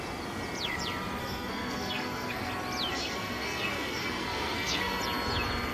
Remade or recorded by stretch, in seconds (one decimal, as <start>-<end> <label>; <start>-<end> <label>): 0.0-1.2 recorded; 1.2-2.5 remade; 2.5-2.9 recorded; 2.9-5.0 remade; 5.0-5.7 recorded

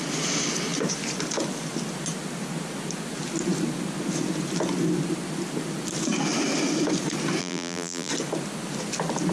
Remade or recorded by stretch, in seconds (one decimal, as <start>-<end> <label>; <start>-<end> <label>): 0.0-7.4 recorded; 7.4-8.1 remade; 8.1-9.3 recorded